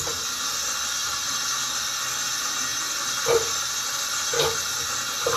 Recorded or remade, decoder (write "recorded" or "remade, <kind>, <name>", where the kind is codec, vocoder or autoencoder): recorded